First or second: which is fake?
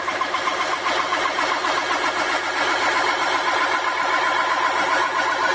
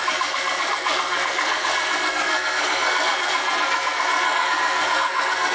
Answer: second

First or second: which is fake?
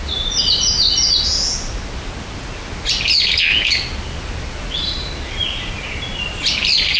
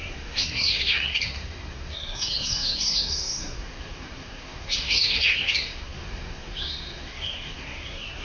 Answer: second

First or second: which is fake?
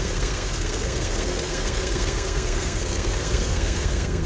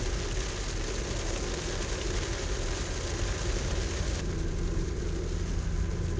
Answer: first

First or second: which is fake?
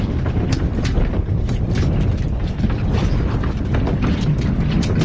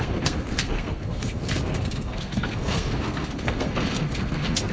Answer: second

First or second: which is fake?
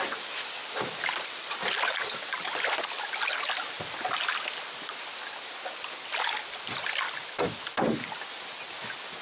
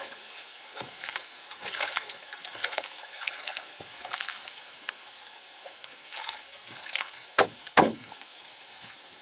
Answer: second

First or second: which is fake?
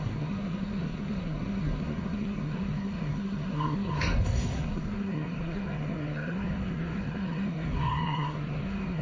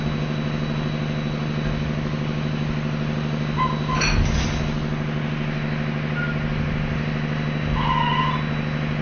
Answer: first